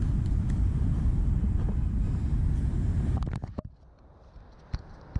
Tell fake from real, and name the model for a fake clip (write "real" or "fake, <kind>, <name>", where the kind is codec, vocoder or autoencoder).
real